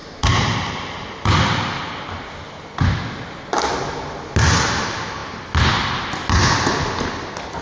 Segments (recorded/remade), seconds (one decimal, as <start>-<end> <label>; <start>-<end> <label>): 0.0-1.8 remade; 1.8-7.6 recorded